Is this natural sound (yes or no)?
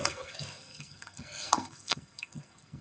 no